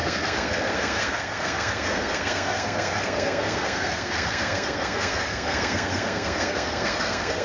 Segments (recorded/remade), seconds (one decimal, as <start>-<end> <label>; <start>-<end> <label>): 0.0-7.4 remade